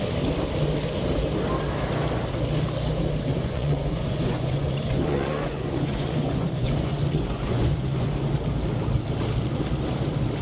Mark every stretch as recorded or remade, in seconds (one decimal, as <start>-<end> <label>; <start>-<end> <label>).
0.0-3.3 recorded; 3.3-8.1 remade; 8.1-10.4 recorded

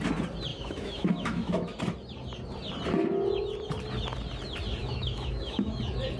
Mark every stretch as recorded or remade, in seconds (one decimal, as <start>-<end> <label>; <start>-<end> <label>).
0.0-0.5 recorded; 0.5-1.8 remade; 1.8-4.8 recorded; 4.8-5.8 remade; 5.8-6.2 recorded